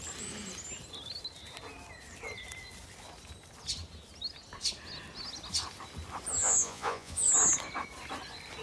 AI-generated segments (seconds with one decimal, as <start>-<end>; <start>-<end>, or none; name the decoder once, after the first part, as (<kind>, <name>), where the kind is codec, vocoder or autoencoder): 6.4-7.3 (vocoder, Vocos)